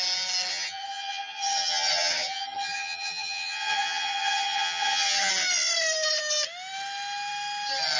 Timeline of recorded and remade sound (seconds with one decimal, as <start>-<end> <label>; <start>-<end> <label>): 0.0-0.5 recorded; 0.5-5.3 remade; 5.3-8.0 recorded